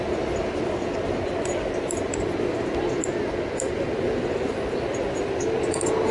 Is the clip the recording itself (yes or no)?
yes